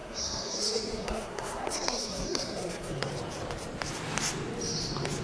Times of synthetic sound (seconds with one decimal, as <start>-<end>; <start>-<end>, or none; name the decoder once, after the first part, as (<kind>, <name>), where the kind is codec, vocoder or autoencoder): 0.0-3.1 (codec, SNAC)